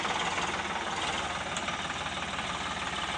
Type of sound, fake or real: real